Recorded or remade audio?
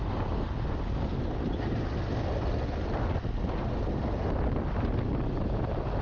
recorded